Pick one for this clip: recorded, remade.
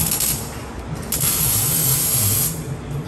recorded